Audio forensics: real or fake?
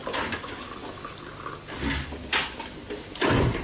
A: real